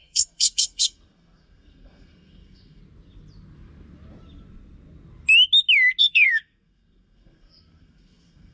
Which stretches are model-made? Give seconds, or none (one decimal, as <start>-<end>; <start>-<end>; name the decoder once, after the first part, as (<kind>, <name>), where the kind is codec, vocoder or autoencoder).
0.0-2.8 (codec, SNAC); 6.0-8.5